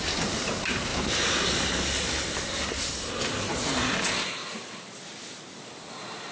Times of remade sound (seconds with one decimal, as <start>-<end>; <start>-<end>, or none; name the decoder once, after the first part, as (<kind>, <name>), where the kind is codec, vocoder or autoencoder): 0.0-4.4 (vocoder, BigVGAN v2); 5.8-6.3